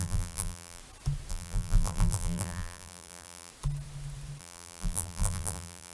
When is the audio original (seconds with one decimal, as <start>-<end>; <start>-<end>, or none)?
0.8-1.3; 3.5-4.4